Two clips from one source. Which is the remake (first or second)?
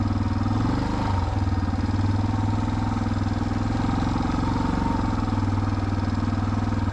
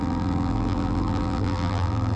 second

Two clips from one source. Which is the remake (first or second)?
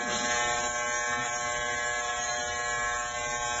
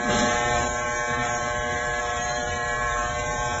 second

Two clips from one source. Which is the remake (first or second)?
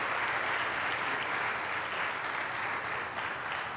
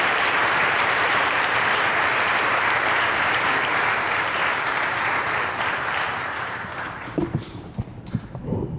second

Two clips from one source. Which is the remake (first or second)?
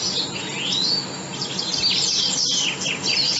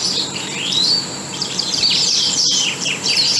second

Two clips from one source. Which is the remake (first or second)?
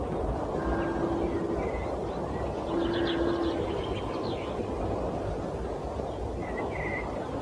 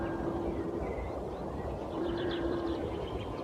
second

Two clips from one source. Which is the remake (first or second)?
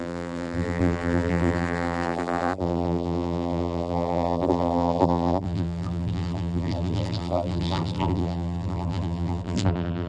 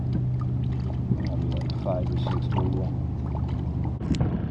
first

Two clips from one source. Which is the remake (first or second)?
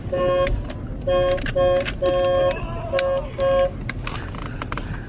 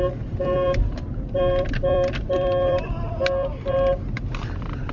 second